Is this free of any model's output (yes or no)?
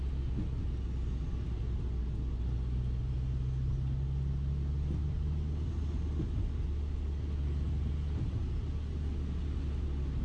yes